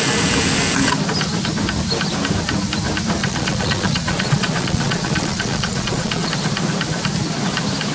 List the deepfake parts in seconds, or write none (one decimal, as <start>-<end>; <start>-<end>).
3.2-6.3

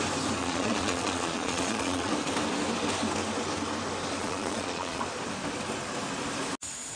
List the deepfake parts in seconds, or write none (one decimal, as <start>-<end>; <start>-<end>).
0.4-2.1; 4.2-5.0

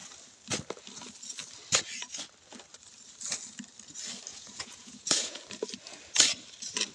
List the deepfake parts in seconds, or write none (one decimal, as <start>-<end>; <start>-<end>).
4.3-5.4

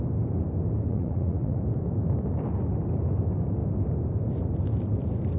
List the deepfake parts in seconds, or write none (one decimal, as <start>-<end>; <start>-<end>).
0.9-1.6

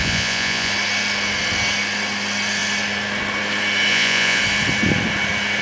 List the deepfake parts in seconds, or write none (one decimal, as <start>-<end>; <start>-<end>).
0.0-0.7; 3.9-4.4

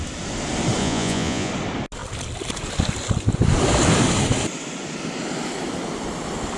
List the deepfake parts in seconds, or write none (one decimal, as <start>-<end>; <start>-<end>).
0.8-1.5

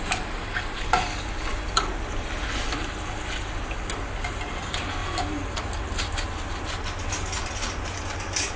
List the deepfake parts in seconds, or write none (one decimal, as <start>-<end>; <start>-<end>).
none